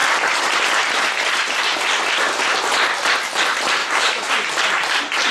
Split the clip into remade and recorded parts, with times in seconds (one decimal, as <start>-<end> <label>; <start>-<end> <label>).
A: 0.0-3.8 recorded; 3.8-4.3 remade; 4.3-5.3 recorded